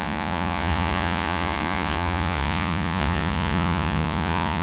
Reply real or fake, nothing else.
fake